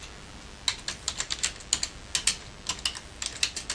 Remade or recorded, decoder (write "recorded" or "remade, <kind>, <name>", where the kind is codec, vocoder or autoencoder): recorded